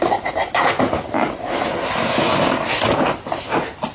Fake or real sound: real